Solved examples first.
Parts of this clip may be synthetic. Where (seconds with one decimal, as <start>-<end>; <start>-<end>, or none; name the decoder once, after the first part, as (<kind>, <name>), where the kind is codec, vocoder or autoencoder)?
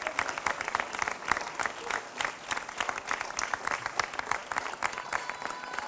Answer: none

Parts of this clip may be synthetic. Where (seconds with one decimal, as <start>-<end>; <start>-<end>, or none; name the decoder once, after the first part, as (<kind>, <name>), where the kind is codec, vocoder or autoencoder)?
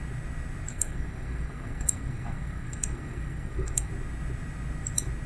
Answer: 0.7-3.9 (codec, SNAC)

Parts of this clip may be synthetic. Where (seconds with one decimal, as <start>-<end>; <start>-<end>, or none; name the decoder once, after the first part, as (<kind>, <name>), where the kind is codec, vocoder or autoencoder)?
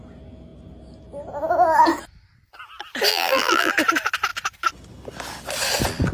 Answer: 3.1-3.7 (vocoder, BigVGAN v2)